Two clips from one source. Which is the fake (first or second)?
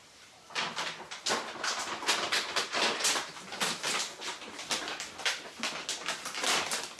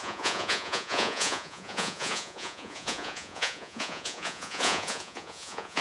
second